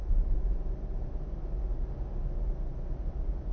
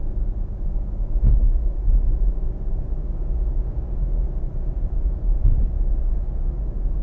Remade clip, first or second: second